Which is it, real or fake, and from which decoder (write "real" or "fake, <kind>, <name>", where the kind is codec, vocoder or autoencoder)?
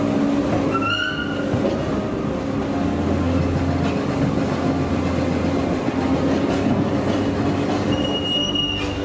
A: real